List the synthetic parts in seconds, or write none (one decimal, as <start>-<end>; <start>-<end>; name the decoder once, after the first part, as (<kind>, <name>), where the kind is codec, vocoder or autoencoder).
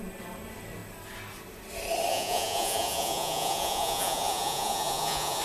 2.1-5.4 (vocoder, Vocos)